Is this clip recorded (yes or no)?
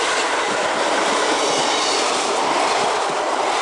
yes